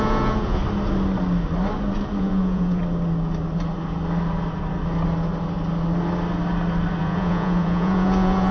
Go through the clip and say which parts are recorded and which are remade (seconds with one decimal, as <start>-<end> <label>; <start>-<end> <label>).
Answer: 0.0-0.6 remade; 0.6-2.2 recorded; 2.2-2.8 remade; 2.8-7.0 recorded; 7.0-8.5 remade